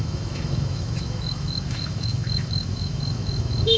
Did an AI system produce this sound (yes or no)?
yes